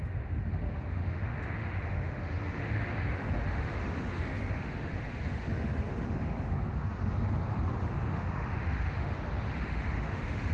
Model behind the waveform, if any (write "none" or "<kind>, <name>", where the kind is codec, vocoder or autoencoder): autoencoder, DAC-VAE